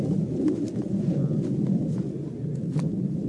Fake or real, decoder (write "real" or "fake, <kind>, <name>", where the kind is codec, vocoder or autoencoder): fake, vocoder, BigVGAN v2